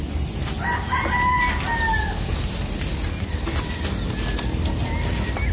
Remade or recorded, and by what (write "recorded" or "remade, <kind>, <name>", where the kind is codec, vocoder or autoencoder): recorded